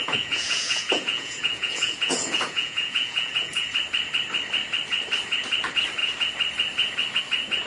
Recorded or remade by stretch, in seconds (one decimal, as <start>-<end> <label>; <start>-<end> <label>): 0.0-3.7 remade; 3.7-7.7 recorded